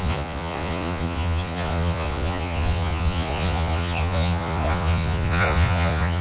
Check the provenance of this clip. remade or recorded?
remade